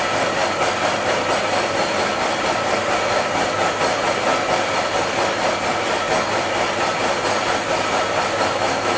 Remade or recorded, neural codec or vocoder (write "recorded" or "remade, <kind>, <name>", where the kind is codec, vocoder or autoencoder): recorded